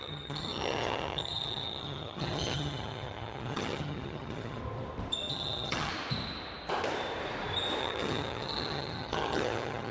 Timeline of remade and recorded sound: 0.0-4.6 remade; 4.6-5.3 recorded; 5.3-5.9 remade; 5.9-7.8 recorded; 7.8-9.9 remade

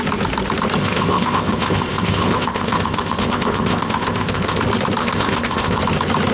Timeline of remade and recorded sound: 0.0-0.8 recorded; 0.8-4.6 remade; 4.6-5.0 recorded; 5.0-5.8 remade; 5.8-6.3 recorded

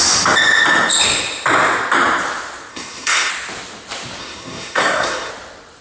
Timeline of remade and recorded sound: 0.0-2.7 recorded; 2.7-3.3 remade; 3.3-4.2 recorded; 4.2-5.3 remade; 5.3-5.8 recorded

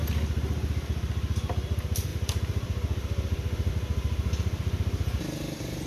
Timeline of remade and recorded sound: 0.0-2.1 recorded; 2.1-3.7 remade; 3.7-5.9 recorded

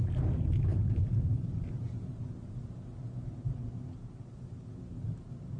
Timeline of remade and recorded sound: 0.0-0.7 recorded; 0.7-2.2 remade; 2.2-5.6 recorded

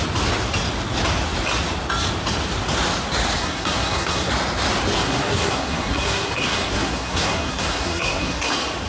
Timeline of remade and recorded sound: 0.0-3.4 recorded; 3.4-4.3 remade; 4.3-5.0 recorded; 5.0-8.5 remade; 8.5-8.9 recorded